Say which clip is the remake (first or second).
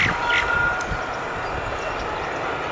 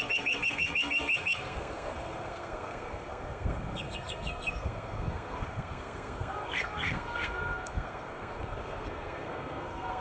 second